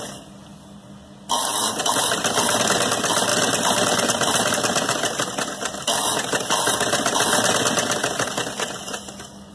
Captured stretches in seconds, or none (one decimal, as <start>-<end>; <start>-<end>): 0.0-1.5; 2.4-3.3; 4.5-9.5